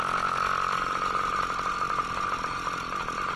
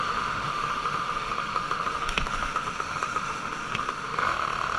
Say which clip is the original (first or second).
first